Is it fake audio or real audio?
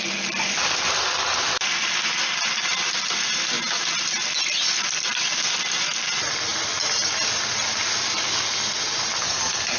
real